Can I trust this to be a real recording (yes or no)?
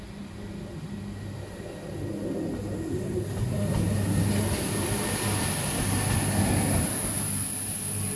yes